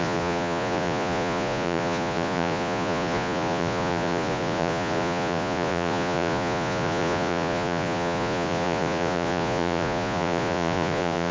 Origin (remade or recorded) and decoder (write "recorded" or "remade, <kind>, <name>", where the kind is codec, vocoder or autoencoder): remade, vocoder, Vocos